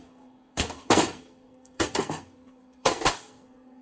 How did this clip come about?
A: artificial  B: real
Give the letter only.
A